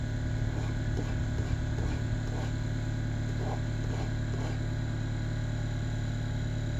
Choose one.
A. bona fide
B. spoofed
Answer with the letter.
A